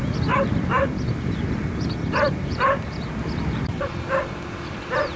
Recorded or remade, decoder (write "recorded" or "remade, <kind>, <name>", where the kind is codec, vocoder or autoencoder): recorded